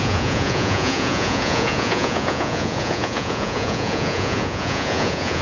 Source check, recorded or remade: remade